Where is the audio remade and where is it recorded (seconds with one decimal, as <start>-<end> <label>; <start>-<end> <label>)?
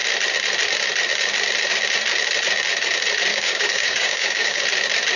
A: 0.0-3.3 recorded; 3.3-4.6 remade; 4.6-5.2 recorded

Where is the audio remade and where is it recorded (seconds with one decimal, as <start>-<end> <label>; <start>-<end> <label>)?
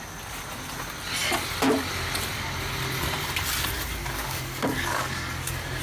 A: 0.0-4.0 recorded; 4.0-5.8 remade